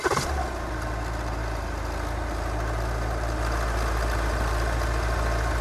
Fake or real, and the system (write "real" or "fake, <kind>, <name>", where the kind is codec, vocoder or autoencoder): real